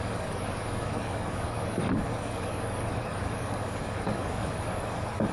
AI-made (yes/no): yes